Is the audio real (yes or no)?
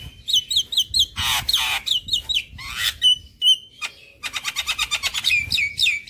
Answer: yes